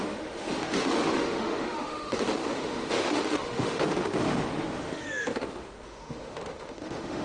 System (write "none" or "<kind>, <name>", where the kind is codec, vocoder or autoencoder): autoencoder, DAC-VAE